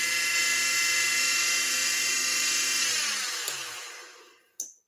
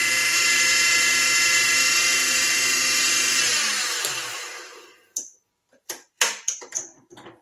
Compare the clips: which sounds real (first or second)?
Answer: first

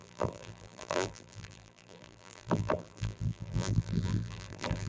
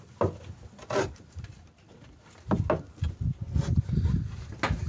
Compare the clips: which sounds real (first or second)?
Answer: second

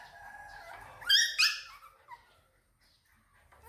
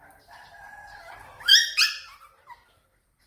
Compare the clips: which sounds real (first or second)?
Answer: first